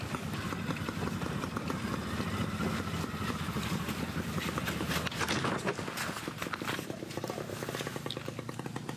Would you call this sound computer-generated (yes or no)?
no